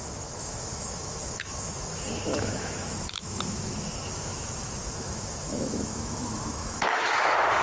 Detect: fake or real fake